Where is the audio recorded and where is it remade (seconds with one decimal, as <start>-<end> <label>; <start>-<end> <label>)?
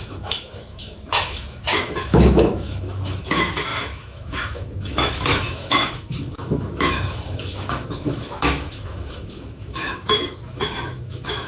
0.0-11.5 remade